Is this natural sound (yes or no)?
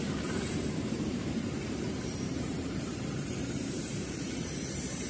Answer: no